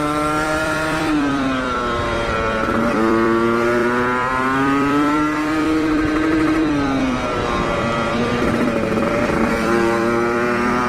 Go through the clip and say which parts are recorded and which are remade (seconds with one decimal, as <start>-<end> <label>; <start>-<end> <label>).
0.0-10.9 remade